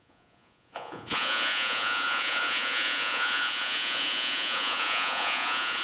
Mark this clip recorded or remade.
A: remade